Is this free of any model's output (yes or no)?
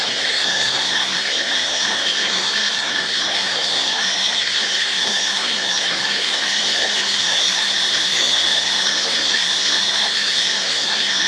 no